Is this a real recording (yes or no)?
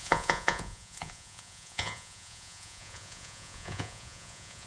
no